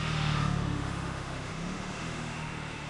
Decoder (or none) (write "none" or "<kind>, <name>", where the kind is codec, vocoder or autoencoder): autoencoder, DAC-VAE